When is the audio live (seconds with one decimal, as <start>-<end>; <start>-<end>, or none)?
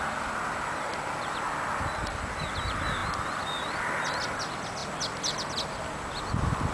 0.0-6.7